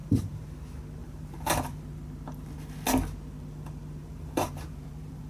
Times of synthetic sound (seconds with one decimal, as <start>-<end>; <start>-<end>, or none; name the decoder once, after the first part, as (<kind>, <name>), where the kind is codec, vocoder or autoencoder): 0.0-0.5 (vocoder, BigVGAN v2); 1.0-1.9; 4.0-5.3

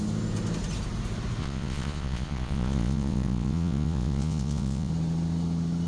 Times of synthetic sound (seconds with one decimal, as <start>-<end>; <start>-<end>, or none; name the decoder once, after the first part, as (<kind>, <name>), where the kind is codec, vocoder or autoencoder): 1.4-4.9 (vocoder, Vocos)

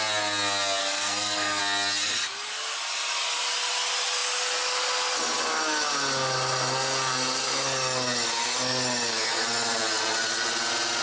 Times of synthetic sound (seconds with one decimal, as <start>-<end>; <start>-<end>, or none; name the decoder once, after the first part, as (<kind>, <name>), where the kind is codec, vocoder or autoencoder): 0.8-1.6 (codec, SNAC)

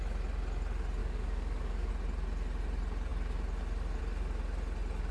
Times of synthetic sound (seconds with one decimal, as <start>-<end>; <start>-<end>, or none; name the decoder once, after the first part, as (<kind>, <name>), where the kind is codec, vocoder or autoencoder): 1.0-1.9 (codec, DAC)